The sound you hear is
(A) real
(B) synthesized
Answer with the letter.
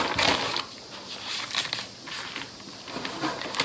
A